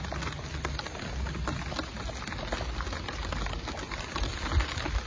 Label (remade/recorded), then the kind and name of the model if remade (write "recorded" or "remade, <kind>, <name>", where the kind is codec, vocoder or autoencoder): recorded